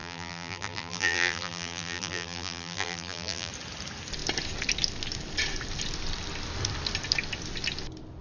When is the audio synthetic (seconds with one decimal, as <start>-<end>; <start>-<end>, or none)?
0.0-3.5